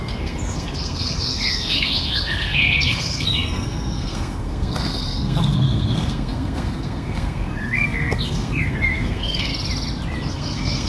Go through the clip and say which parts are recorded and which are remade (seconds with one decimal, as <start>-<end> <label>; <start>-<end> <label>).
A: 0.0-9.5 remade; 9.5-10.3 recorded; 10.3-10.9 remade